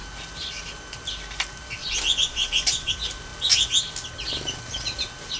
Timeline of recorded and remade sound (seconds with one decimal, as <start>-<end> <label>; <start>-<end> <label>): 0.0-1.8 recorded; 1.8-2.9 remade; 2.9-5.4 recorded